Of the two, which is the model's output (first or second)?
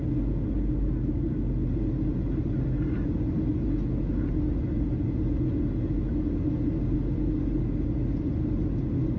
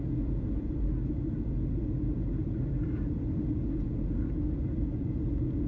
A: second